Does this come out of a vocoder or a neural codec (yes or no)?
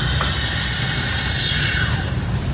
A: no